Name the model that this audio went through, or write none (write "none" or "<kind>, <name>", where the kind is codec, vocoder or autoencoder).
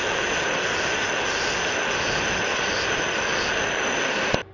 none